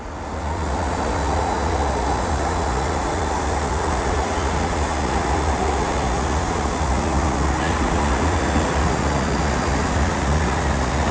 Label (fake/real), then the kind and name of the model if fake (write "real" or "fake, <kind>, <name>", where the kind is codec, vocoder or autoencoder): fake, vocoder, Vocos